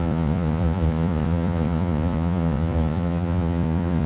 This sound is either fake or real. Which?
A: fake